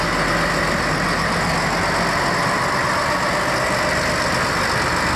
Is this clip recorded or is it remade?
recorded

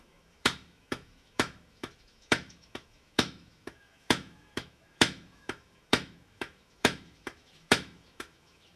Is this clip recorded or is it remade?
remade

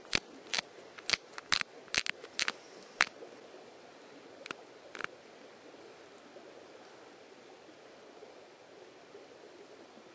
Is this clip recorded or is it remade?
recorded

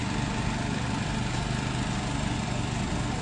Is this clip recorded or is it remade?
recorded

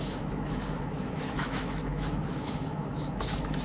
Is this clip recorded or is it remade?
remade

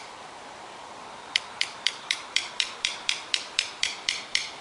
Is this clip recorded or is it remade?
remade